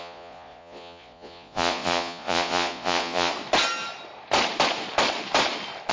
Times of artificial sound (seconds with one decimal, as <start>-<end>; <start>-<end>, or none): 0.0-3.3